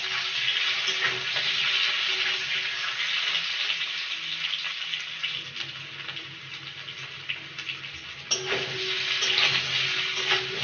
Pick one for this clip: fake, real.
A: real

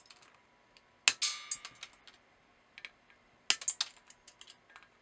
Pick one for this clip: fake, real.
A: real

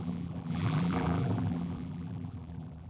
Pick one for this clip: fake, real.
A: fake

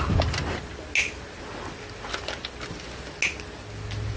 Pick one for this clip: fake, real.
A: real